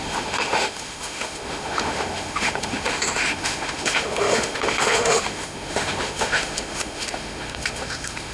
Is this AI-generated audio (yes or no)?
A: yes